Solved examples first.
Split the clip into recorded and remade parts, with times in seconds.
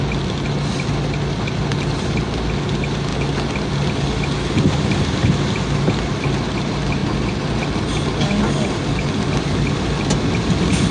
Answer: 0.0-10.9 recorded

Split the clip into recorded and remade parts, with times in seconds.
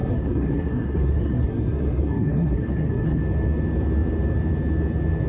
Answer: 0.0-3.2 remade; 3.2-5.3 recorded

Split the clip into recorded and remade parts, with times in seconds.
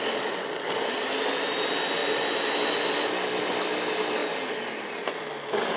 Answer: 0.0-5.8 recorded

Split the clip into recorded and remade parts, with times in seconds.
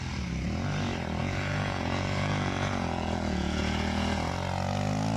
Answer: 0.0-1.2 recorded; 1.2-4.3 remade; 4.3-5.2 recorded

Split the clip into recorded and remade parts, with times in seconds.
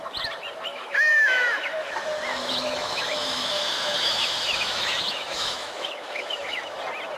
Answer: 0.0-0.7 recorded; 0.7-1.9 remade; 1.9-2.3 recorded; 2.3-6.6 remade; 6.6-7.2 recorded